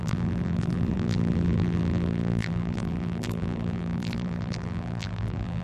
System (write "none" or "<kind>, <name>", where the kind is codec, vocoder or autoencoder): vocoder, BigVGAN v2